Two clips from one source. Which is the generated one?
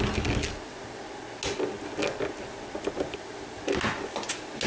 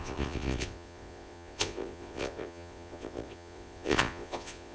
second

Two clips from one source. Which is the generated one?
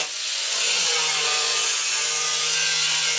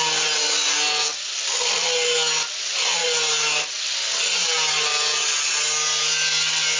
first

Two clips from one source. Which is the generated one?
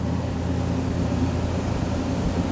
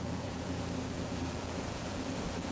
second